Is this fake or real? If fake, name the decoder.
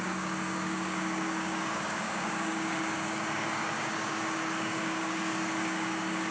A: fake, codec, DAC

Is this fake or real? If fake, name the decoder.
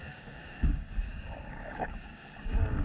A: fake, codec, DAC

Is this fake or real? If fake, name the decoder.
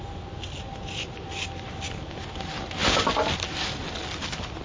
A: real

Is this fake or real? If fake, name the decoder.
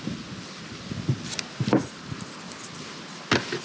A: real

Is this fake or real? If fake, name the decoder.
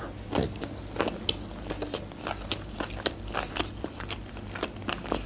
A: real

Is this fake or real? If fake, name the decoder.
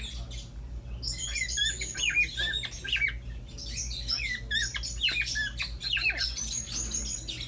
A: real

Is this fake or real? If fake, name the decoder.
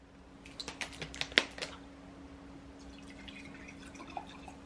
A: real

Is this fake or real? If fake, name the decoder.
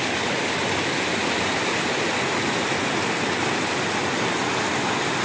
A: real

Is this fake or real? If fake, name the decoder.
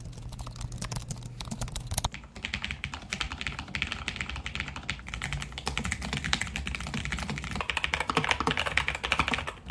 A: real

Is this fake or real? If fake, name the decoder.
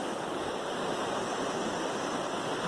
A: real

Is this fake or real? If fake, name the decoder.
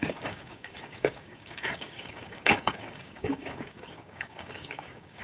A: fake, codec, DAC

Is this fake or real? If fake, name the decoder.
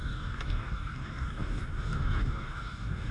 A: fake, codec, DAC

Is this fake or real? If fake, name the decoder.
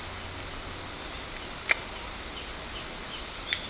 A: real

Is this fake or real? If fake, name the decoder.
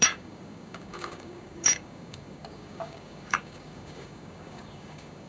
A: fake, codec, DAC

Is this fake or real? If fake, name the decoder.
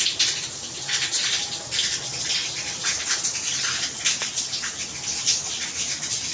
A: real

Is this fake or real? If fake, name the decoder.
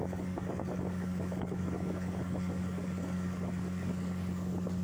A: fake, codec, DAC